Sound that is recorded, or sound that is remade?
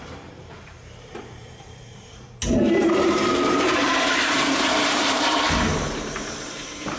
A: remade